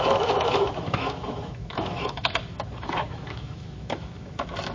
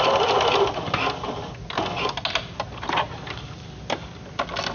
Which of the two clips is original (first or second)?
second